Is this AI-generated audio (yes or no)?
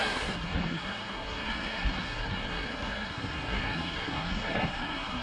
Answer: yes